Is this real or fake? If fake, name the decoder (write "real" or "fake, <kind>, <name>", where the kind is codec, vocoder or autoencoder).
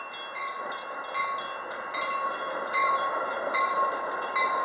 real